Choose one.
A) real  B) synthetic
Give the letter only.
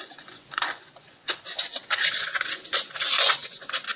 B